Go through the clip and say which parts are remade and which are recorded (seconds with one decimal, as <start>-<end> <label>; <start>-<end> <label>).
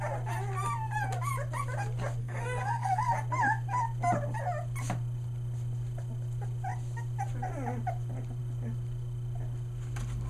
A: 0.0-2.2 recorded; 2.2-3.1 remade; 3.1-10.3 recorded